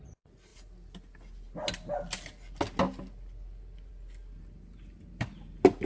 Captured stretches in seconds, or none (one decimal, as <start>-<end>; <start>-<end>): 0.0-5.9